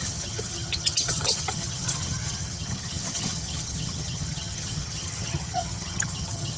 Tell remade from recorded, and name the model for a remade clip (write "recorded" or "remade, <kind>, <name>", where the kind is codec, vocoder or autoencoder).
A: remade, vocoder, HiFi-GAN